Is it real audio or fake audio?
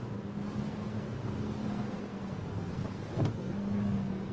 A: fake